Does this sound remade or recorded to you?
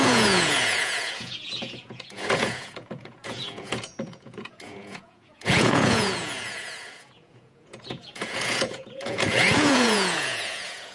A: remade